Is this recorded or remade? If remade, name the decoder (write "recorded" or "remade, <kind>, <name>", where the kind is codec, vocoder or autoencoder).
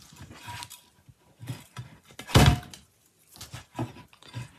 recorded